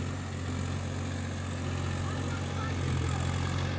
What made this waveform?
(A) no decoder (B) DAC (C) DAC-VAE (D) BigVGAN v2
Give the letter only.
A